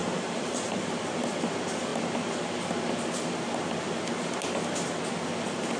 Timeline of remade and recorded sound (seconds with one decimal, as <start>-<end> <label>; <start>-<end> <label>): 0.0-0.9 remade; 0.9-5.8 recorded